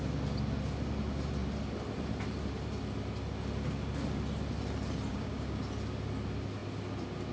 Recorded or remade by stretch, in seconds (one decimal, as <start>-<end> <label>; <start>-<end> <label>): 0.0-5.1 recorded; 5.1-5.6 remade; 5.6-7.3 recorded